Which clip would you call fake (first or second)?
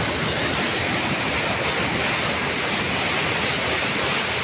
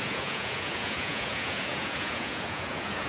second